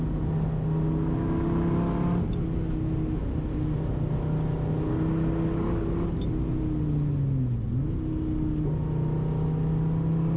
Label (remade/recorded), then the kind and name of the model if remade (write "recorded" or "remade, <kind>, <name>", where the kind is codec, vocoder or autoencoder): recorded